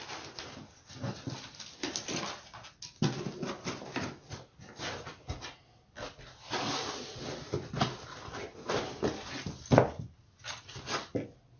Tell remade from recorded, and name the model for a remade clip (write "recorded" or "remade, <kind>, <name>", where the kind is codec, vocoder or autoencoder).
recorded